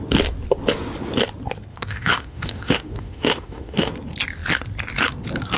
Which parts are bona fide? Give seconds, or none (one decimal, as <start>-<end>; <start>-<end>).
0.0-1.7; 3.9-5.6